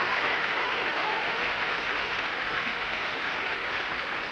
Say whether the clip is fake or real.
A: fake